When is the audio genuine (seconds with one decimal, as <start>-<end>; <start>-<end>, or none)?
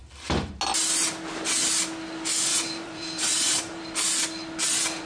0.5-2.5; 3.8-5.1